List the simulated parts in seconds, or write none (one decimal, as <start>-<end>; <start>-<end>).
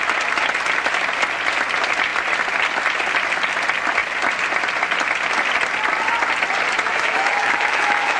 6.9-8.2